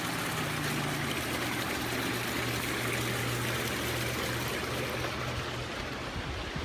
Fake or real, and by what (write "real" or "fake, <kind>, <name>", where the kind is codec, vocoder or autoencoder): real